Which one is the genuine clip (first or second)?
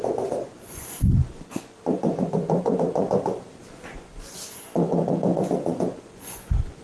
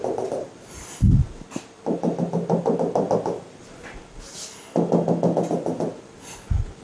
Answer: second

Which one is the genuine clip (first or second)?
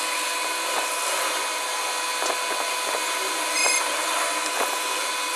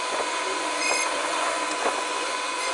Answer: first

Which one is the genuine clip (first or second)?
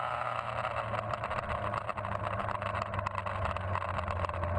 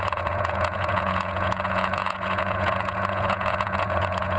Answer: first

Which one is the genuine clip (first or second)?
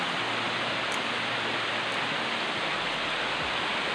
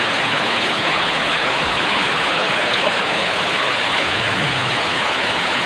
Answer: first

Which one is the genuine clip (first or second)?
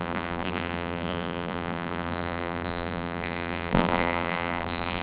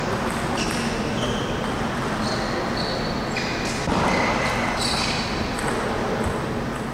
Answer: second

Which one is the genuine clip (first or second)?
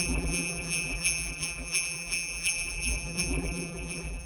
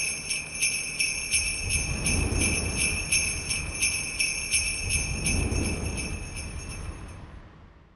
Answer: second